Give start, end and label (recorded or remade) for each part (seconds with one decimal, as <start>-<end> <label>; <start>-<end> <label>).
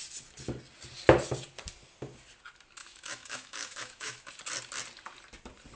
0.0-2.8 recorded; 2.8-4.3 remade; 4.3-5.8 recorded